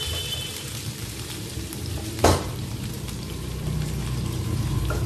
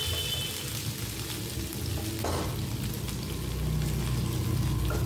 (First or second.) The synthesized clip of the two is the first